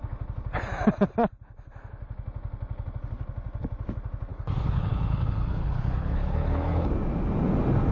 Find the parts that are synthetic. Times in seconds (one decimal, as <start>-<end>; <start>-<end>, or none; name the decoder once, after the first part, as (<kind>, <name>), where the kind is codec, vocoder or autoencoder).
4.3-6.9 (codec, HILCodec)